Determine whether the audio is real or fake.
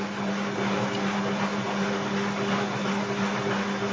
real